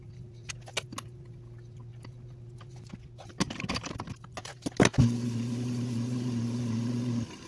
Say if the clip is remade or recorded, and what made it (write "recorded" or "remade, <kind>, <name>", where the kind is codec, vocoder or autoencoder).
recorded